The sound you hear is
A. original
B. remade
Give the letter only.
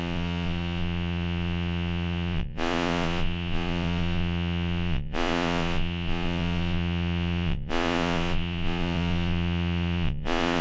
B